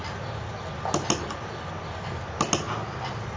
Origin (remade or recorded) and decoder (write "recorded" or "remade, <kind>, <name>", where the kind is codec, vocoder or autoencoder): recorded